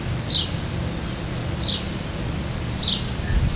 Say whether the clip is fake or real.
real